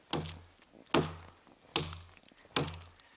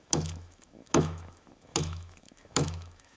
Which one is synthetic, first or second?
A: second